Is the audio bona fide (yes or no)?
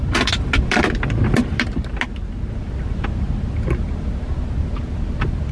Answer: yes